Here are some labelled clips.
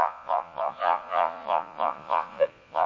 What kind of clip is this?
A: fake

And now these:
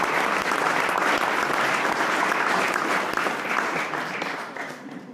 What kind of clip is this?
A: real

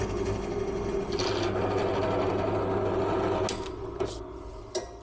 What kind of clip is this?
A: real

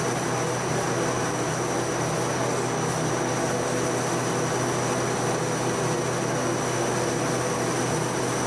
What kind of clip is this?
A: real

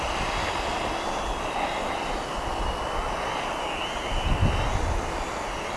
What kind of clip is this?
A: real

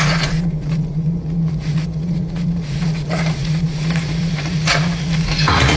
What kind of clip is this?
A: fake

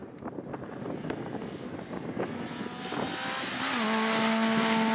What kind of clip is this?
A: real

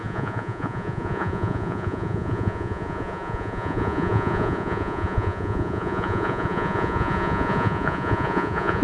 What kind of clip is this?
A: fake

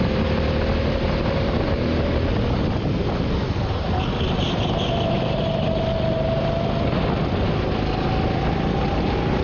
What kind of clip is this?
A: real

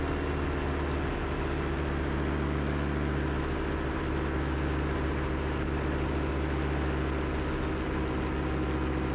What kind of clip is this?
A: real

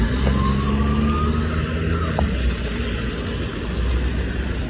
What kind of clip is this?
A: real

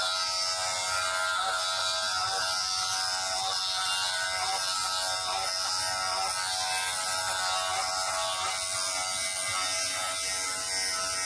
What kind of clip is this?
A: real